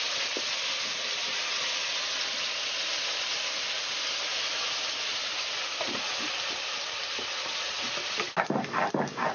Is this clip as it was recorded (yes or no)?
yes